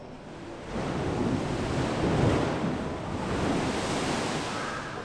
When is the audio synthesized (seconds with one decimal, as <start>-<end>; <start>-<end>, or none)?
none